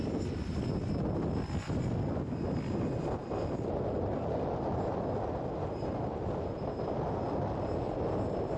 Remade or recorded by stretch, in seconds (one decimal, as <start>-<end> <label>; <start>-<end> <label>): 0.0-8.6 recorded